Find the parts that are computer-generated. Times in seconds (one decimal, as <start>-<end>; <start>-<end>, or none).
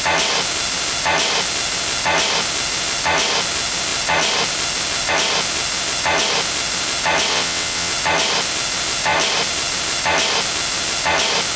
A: 7.3-7.9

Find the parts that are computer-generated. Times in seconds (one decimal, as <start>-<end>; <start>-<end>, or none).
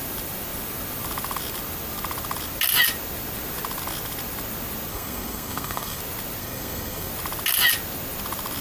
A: 4.9-6.0; 6.4-7.1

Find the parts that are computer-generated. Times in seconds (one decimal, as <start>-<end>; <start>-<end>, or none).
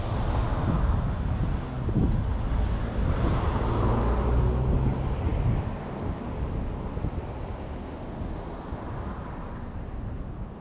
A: none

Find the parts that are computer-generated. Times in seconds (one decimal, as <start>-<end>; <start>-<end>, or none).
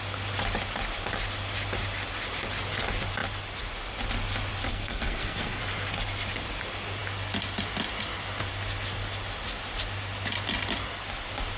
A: 4.7-5.6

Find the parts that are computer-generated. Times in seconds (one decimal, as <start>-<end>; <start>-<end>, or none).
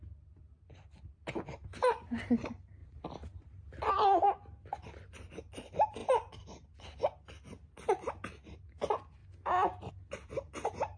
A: none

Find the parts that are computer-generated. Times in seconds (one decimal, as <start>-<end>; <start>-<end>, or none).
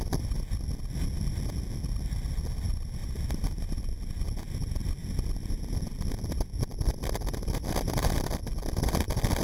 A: 3.0-4.0